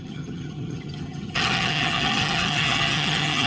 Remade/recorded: remade